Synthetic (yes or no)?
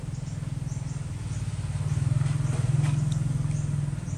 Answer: no